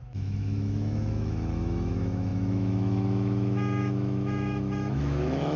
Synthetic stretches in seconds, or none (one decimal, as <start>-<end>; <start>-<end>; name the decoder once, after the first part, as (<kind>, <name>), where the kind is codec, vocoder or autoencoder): 0.0-5.6 (autoencoder, DAC-VAE)